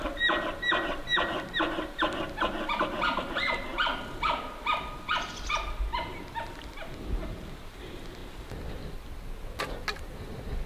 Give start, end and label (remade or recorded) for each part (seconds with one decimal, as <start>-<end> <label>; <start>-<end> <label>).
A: 0.0-10.7 recorded